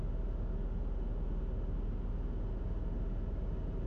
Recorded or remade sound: recorded